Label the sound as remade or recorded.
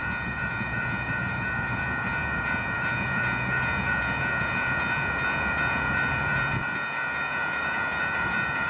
remade